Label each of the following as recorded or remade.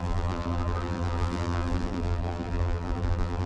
remade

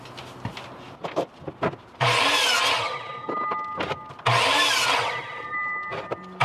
recorded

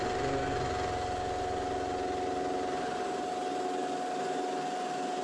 recorded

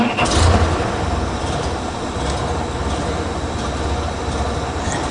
recorded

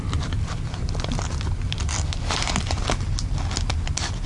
recorded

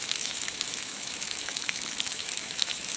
remade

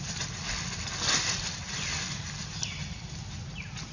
recorded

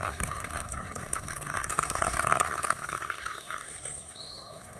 remade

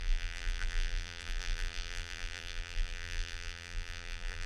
remade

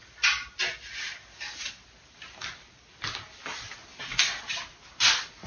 recorded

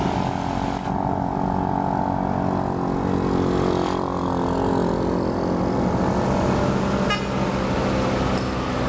recorded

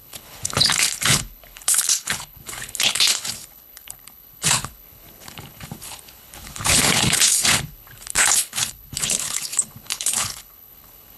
remade